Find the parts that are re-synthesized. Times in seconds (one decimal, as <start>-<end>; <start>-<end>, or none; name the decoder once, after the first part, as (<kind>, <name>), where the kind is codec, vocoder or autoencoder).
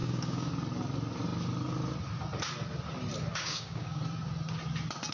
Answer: 0.0-0.5 (codec, DAC); 3.3-4.0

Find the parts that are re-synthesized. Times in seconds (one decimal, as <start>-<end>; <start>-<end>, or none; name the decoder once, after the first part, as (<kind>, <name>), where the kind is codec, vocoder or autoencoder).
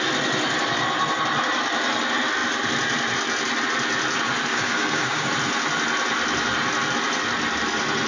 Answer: 4.5-5.3 (codec, DAC)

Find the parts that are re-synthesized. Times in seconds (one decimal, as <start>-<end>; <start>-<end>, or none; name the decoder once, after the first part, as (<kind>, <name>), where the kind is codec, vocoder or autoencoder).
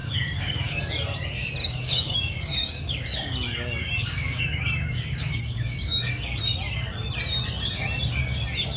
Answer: 0.0-0.8 (codec, DAC); 1.6-6.4